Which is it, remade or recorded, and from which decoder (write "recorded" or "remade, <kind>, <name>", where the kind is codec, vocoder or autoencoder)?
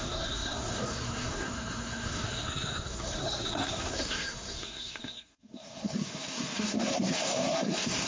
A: remade, codec, SNAC